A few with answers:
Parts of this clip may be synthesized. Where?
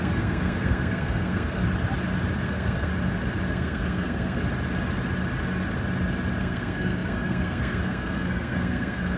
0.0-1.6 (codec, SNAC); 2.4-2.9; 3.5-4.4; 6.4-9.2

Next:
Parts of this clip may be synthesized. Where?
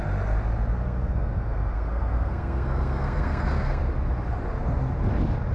0.7-3.8 (codec, SNAC)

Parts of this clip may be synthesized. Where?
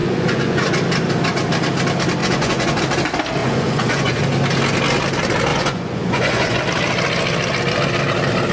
0.0-0.7 (vocoder, Vocos); 2.2-2.8; 3.4-4.2; 5.5-6.6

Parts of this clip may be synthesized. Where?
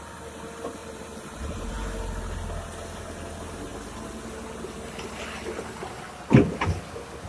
0.8-1.7 (vocoder, BigVGAN v2)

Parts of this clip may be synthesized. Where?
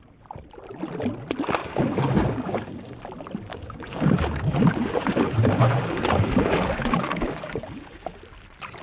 1.6-3.0 (codec, DAC); 3.5-8.2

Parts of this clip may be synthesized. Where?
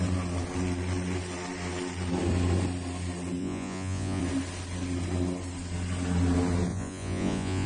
3.4-4.2 (vocoder, Vocos); 6.7-7.7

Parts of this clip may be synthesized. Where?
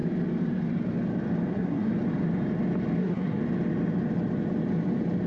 1.5-1.9 (codec, SNAC); 3.0-3.4